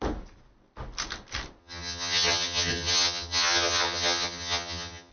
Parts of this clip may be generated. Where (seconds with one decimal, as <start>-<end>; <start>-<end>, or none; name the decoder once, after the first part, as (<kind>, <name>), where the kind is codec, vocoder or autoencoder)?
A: 1.6-5.1 (vocoder, HiFi-GAN)